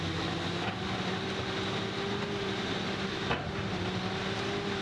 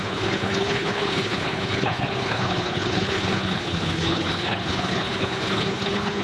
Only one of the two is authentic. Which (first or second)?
first